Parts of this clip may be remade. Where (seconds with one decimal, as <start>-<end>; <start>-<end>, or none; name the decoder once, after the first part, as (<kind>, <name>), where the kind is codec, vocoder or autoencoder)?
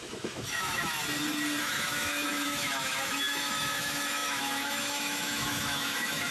0.0-1.0 (autoencoder, DAC-VAE); 1.6-6.3